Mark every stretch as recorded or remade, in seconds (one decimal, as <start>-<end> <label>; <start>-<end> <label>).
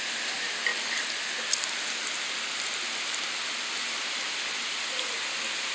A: 0.0-5.7 recorded